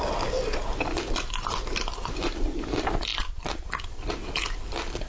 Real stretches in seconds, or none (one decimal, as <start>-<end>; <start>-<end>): 0.0-5.1